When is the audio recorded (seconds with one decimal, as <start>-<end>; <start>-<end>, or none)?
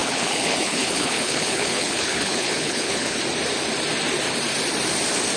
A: 3.2-5.4